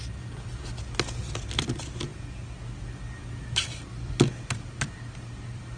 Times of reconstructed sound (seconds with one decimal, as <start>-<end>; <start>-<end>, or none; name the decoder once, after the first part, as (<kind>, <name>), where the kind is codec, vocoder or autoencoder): none